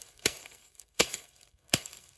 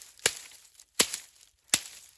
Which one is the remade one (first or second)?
first